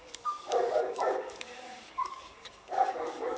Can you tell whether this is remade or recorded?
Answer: remade